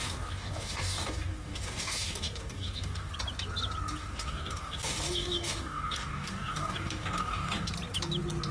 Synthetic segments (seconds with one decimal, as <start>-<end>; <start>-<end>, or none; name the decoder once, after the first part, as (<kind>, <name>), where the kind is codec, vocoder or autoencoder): 0.0-3.1 (codec, DAC); 4.0-7.7